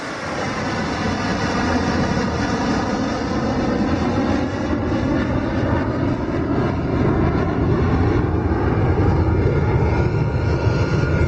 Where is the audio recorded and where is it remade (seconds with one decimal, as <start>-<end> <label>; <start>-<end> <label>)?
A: 0.0-11.3 recorded

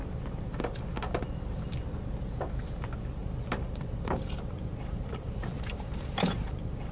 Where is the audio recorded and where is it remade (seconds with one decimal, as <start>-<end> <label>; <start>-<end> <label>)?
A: 0.0-3.2 recorded; 3.2-6.9 remade

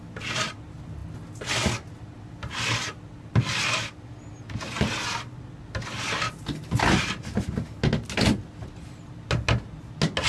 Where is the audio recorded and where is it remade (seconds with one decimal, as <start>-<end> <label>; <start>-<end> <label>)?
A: 0.0-10.3 recorded

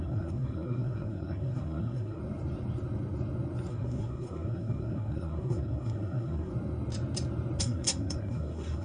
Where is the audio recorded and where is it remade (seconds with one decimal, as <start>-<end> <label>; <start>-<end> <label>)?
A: 0.0-2.2 remade; 2.2-3.7 recorded; 3.7-6.5 remade; 6.5-7.6 recorded; 7.6-8.8 remade